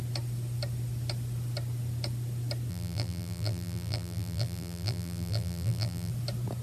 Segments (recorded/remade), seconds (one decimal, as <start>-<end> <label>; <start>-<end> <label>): 0.0-2.7 recorded; 2.7-6.1 remade; 6.1-6.6 recorded